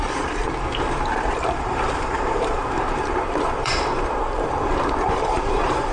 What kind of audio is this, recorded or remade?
remade